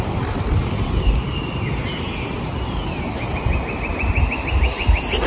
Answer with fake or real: real